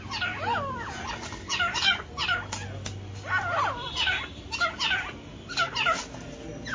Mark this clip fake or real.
real